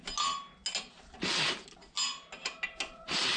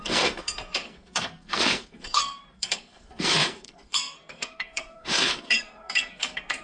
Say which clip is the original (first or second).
first